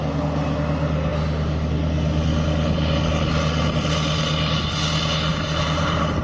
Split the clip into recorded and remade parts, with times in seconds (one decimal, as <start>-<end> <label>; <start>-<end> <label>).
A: 0.0-5.3 recorded; 5.3-6.2 remade